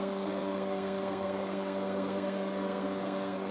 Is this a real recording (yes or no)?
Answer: no